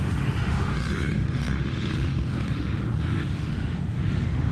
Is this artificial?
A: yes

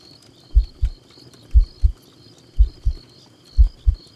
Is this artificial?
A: no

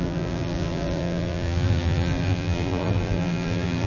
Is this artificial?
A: yes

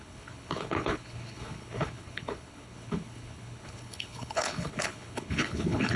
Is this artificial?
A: yes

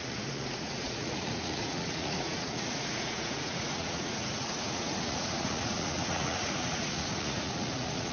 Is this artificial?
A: yes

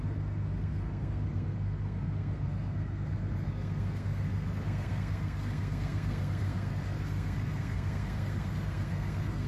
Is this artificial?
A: yes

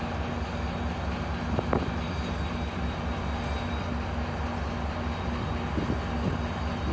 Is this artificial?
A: no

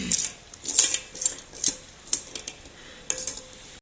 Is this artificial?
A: no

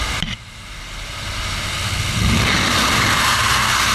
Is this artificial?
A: no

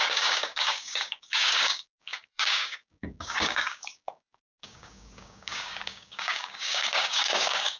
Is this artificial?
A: yes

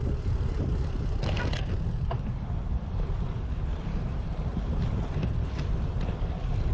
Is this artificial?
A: yes